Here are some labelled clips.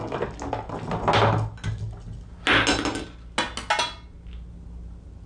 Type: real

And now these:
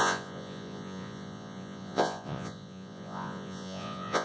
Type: fake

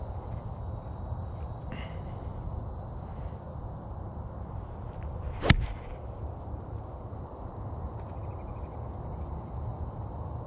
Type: real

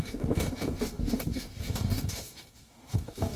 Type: fake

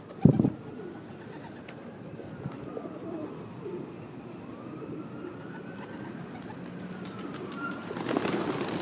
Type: real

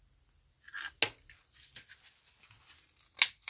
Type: real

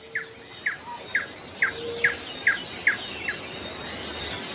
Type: real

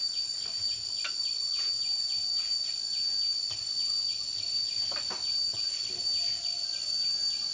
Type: real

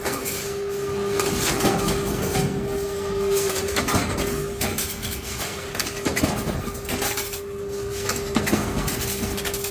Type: fake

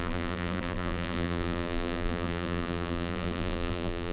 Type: fake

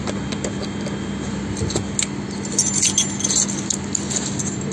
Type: real